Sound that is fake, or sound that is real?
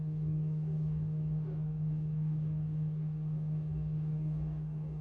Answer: fake